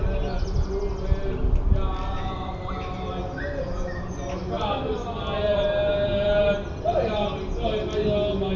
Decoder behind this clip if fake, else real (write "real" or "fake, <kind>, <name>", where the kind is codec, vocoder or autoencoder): real